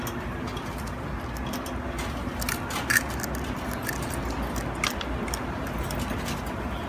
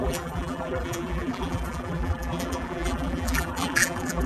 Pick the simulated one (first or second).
second